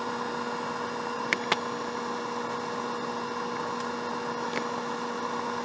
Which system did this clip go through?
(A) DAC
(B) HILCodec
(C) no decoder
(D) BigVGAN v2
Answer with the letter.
C